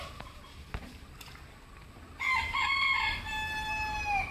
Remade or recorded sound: recorded